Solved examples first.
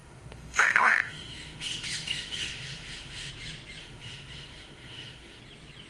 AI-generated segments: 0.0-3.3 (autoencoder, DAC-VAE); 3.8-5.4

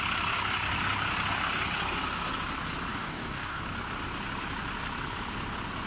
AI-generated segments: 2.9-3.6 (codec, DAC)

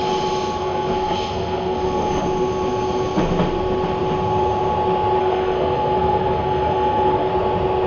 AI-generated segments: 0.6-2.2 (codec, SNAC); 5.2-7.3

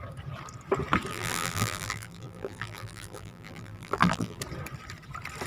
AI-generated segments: 1.1-4.4 (vocoder, BigVGAN v2)

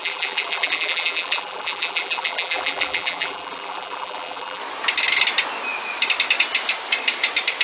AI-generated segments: 0.0-4.6 (vocoder, BigVGAN v2)

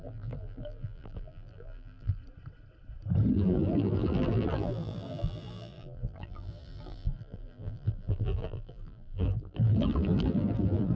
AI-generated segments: 0.0-2.2 (vocoder, BigVGAN v2); 3.3-11.0